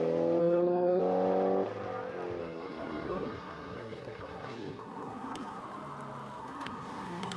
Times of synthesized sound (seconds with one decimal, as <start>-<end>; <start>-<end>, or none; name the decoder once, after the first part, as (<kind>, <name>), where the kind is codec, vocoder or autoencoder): 0.4-1.0 (codec, SNAC); 2.4-5.6; 6.4-7.4

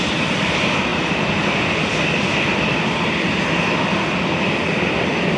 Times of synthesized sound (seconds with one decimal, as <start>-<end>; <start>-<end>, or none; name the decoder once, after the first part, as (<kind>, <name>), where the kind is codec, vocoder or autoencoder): 0.0-0.9 (vocoder, BigVGAN v2); 4.1-5.4

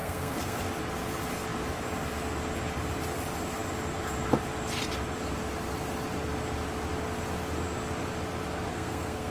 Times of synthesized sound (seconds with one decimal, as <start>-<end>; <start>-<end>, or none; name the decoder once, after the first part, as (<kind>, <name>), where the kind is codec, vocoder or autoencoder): 0.0-0.6 (codec, SNAC); 8.7-9.3

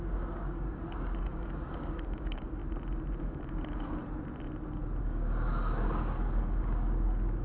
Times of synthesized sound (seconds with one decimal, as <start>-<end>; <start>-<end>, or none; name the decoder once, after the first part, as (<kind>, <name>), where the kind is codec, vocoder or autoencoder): 0.0-2.6 (codec, DAC); 3.2-4.0; 5.0-7.4

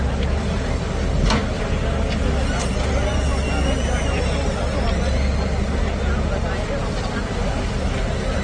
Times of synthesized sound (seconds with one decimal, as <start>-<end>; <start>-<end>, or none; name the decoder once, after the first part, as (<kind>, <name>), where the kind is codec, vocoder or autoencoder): none